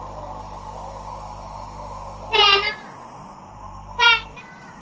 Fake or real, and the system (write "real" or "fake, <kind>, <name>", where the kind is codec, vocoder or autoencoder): fake, vocoder, BigVGAN v2